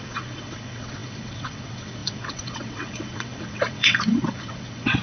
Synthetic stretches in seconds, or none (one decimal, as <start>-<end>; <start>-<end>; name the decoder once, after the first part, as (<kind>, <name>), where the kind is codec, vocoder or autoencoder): 0.0-5.0 (vocoder, WaveNeXt)